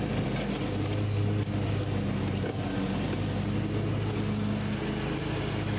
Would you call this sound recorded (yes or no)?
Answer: yes